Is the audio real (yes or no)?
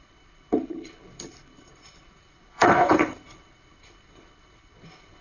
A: no